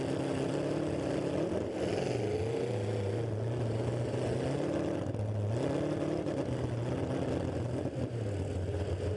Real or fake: real